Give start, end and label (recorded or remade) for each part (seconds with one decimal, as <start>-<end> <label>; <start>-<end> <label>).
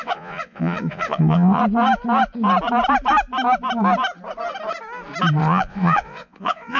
0.0-1.6 remade; 1.6-5.4 recorded; 5.4-6.8 remade